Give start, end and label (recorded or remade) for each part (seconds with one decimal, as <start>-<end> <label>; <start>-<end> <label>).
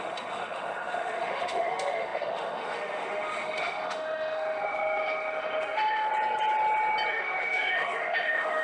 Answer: 0.0-6.1 remade; 6.1-7.1 recorded; 7.1-8.6 remade